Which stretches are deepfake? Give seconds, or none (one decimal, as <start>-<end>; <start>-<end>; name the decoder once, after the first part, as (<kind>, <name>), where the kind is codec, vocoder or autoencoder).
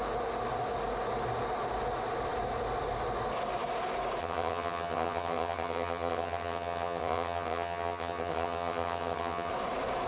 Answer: 4.2-9.5 (vocoder, HiFi-GAN)